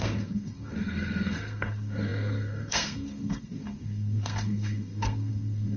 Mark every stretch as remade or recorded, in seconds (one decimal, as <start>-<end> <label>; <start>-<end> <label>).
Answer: 0.0-5.8 remade